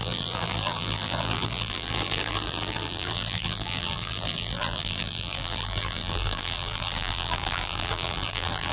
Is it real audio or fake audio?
fake